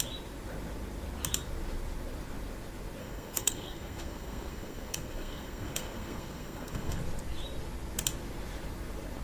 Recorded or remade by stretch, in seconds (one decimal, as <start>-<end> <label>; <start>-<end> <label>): 0.0-3.0 recorded; 3.0-7.0 remade; 7.0-9.2 recorded